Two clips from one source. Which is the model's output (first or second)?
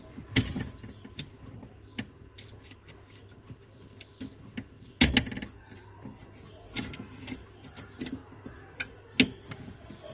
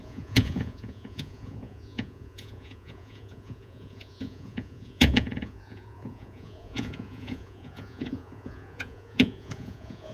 second